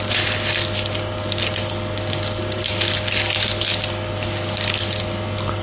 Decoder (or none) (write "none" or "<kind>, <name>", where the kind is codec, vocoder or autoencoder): none